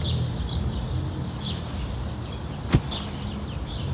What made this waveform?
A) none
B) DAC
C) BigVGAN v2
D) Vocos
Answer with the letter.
A